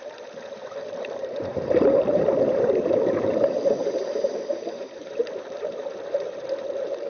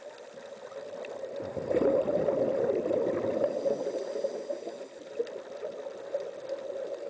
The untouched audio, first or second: second